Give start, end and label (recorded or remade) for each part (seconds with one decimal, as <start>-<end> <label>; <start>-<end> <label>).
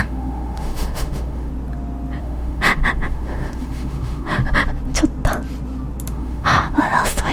0.0-1.5 remade; 1.5-2.2 recorded; 2.2-4.4 remade; 4.4-6.1 recorded; 6.1-7.3 remade